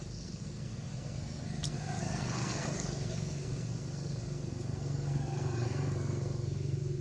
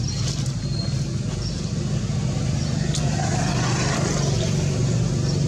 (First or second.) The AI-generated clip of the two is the first